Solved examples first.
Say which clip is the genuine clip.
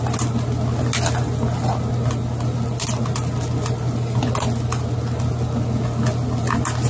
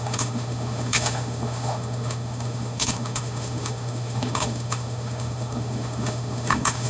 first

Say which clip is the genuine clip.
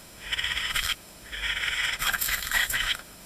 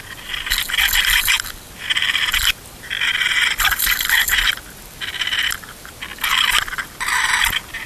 second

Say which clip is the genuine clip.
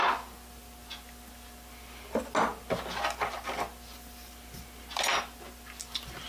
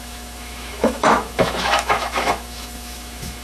first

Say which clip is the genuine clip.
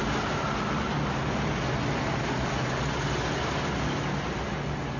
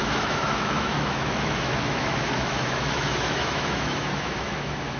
first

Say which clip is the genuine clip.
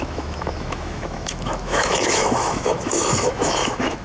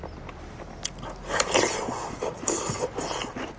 second